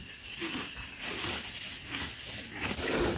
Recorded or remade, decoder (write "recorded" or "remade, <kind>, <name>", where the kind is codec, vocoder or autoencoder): recorded